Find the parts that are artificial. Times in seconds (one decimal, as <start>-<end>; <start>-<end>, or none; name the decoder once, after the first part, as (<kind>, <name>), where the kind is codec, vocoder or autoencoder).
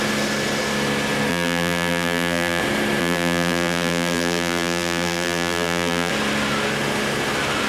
1.3-2.6 (vocoder, BigVGAN v2); 3.0-6.1